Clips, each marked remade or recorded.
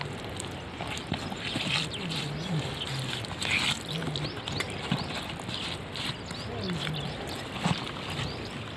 recorded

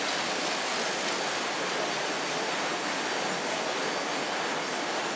recorded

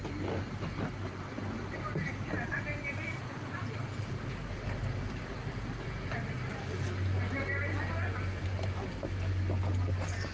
recorded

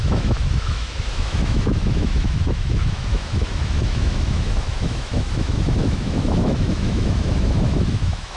remade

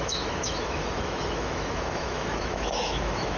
remade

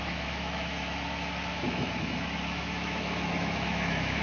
remade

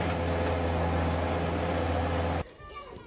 recorded